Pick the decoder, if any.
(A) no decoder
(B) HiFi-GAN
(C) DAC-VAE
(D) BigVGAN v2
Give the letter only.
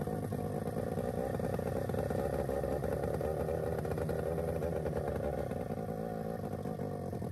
A